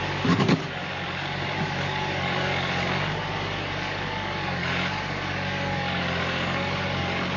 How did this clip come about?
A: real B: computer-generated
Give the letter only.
B